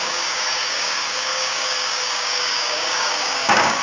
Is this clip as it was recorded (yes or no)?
no